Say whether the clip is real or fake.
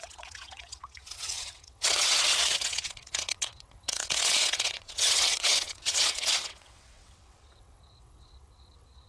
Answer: fake